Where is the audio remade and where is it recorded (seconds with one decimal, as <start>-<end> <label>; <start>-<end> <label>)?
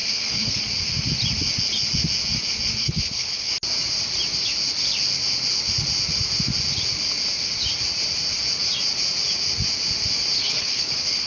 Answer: 0.0-0.6 remade; 0.6-2.8 recorded; 2.8-3.5 remade; 3.5-10.4 recorded; 10.4-11.3 remade